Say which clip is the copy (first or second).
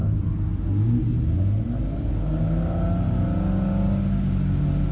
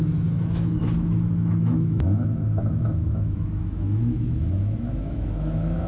second